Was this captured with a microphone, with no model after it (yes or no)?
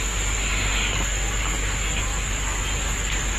yes